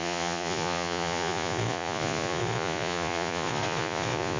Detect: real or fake fake